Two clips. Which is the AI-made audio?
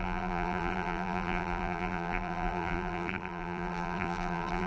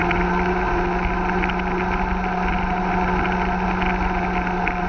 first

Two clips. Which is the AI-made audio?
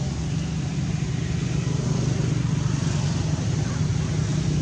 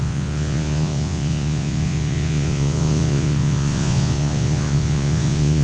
second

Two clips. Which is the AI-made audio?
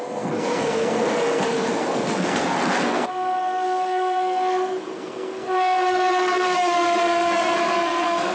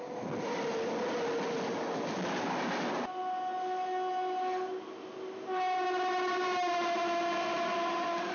first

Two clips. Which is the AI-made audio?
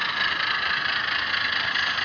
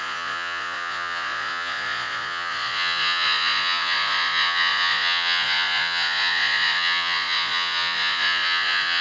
second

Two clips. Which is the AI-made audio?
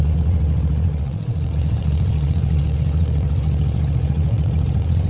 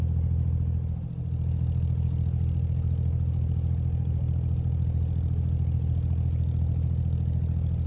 first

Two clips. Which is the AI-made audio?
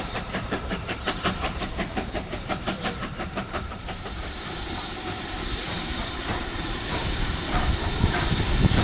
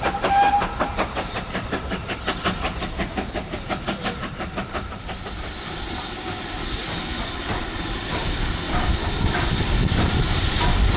first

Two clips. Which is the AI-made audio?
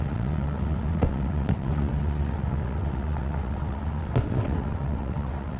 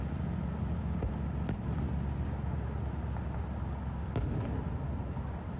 first